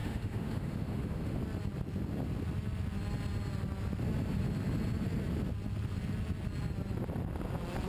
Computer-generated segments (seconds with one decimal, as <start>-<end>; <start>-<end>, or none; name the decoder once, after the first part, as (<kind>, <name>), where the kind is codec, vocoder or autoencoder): 0.0-1.4 (autoencoder, DAC-VAE)